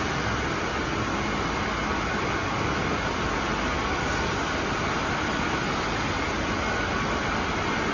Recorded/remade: recorded